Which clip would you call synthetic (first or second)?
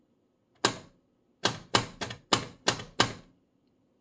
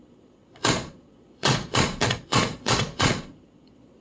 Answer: second